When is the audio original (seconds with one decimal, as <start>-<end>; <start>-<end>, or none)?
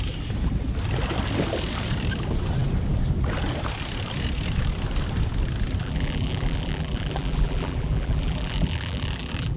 0.0-5.8